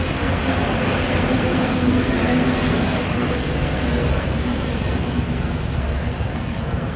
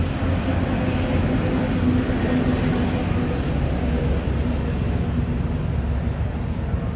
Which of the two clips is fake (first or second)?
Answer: first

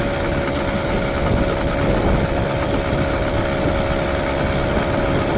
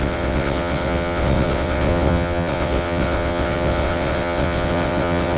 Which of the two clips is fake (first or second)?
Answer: second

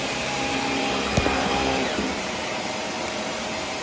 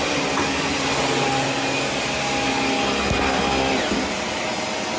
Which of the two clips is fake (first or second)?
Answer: first